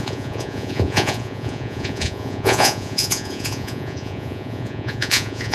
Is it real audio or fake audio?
fake